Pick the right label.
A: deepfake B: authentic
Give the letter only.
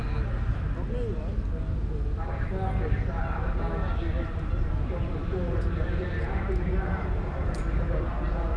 B